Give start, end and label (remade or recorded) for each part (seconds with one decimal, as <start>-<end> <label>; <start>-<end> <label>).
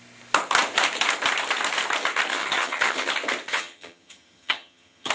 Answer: 0.0-2.3 recorded; 2.3-3.1 remade; 3.1-3.5 recorded; 3.5-5.1 remade